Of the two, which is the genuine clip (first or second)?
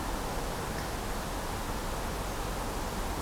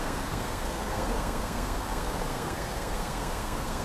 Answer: first